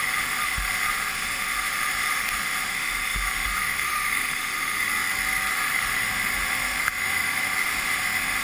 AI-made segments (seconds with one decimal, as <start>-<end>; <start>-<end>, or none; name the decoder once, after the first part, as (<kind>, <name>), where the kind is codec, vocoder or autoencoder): 0.0-4.9 (autoencoder, DAC-VAE); 5.5-8.4